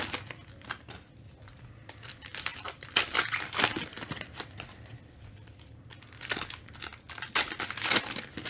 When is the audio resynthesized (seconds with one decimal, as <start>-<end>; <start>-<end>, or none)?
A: 2.5-3.2